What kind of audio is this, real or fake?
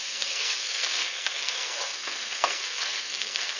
fake